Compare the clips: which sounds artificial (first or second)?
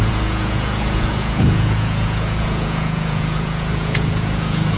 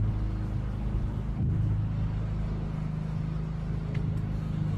first